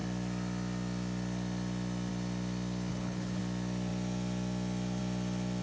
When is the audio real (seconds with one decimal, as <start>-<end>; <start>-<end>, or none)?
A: 0.0-2.9; 3.4-5.6

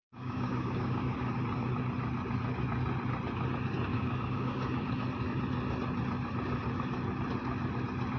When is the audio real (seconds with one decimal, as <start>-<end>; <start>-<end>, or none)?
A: 1.3-3.9; 4.9-8.2

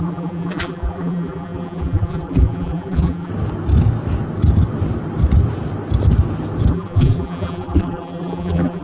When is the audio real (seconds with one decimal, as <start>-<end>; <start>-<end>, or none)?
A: 3.3-6.7

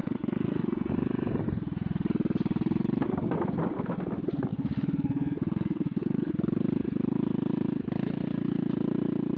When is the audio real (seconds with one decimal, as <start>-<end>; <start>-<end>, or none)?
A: 0.9-4.5; 6.3-9.4